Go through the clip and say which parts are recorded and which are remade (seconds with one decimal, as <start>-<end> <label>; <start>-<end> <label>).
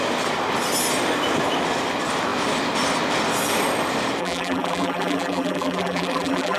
0.0-4.2 recorded; 4.2-6.6 remade